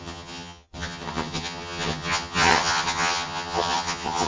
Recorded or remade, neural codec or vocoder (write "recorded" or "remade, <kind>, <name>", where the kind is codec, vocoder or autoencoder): remade, vocoder, HiFi-GAN